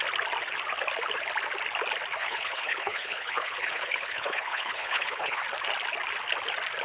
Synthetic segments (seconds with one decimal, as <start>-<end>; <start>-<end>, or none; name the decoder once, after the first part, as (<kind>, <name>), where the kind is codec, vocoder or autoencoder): 2.2-5.4 (codec, HILCodec)